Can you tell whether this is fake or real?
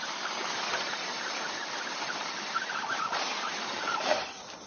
real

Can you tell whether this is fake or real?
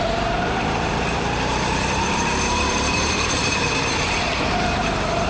fake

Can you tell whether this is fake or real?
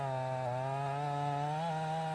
real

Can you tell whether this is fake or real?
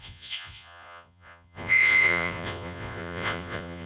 fake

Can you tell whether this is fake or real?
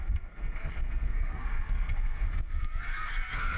fake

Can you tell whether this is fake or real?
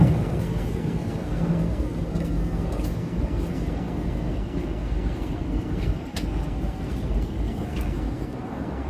fake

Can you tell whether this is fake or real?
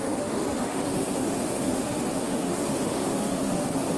fake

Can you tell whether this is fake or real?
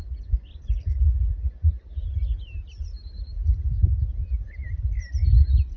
real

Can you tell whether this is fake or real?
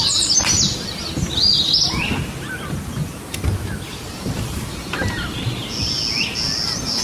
real